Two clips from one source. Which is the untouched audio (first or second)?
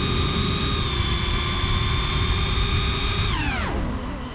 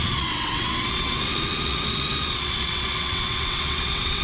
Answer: first